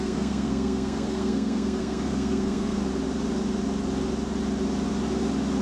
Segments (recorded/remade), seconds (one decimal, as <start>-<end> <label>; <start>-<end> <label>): 0.0-2.8 remade; 2.8-5.6 recorded